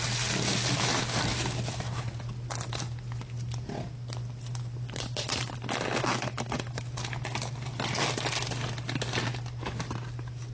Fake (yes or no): no